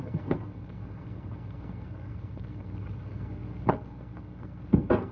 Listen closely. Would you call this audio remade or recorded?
remade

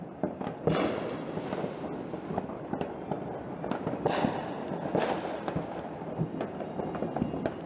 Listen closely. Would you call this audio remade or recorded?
recorded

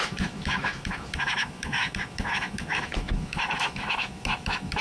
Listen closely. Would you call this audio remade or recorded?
remade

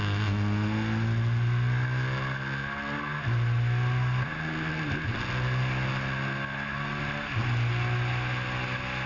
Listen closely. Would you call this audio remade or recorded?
recorded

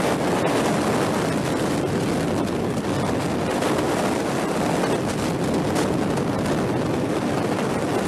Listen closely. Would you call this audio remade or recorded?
recorded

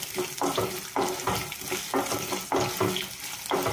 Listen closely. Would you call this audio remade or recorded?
recorded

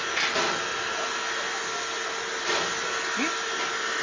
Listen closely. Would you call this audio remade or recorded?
recorded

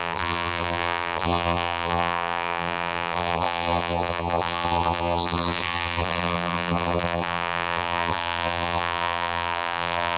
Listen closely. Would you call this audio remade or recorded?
remade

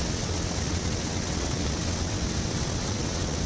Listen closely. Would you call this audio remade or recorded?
remade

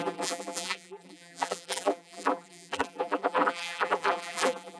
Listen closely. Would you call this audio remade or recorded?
remade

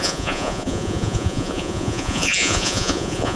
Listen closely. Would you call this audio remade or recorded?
remade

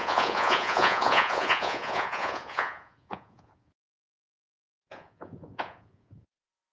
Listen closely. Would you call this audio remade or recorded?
remade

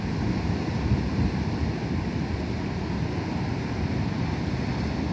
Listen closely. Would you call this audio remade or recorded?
recorded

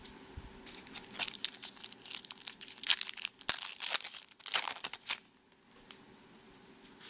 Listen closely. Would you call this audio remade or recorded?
recorded